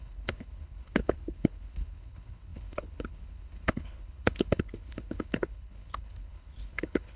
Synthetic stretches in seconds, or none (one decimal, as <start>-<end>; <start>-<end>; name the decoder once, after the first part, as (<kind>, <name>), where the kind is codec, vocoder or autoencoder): 0.0-7.2 (codec, HILCodec)